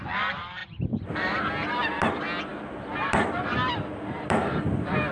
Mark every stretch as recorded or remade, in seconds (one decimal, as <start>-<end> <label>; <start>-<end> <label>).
0.0-0.6 recorded; 0.6-2.1 remade; 2.1-2.5 recorded; 2.5-5.1 remade